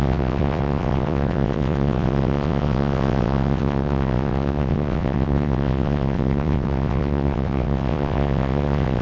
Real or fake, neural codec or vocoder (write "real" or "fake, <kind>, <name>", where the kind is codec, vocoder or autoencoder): fake, vocoder, WaveNeXt